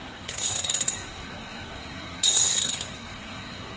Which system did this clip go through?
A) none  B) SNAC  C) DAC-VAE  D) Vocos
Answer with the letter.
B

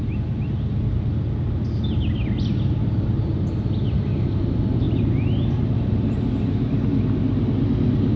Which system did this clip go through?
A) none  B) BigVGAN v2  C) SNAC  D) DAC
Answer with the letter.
A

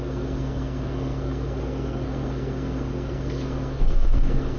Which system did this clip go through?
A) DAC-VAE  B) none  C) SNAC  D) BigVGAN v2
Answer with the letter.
C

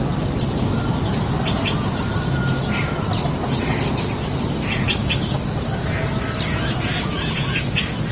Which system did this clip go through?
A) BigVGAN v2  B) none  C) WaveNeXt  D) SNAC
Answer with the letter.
B